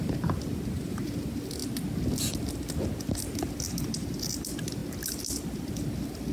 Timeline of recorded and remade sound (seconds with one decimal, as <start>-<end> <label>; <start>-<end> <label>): 0.0-6.3 recorded